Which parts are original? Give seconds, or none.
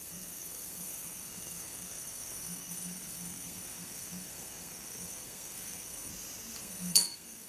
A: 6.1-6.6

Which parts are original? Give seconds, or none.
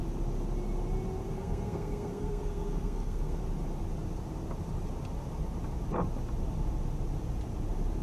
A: 0.0-1.3; 3.4-8.0